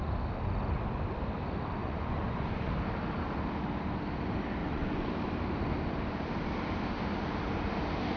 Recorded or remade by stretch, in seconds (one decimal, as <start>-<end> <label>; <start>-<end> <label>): 0.0-1.8 recorded; 1.8-2.7 remade; 2.7-4.6 recorded; 4.6-5.1 remade; 5.1-8.2 recorded